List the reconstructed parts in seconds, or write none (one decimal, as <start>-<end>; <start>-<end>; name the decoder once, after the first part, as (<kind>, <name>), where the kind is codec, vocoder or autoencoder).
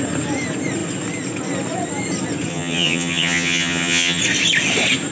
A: 2.5-4.2 (vocoder, HiFi-GAN)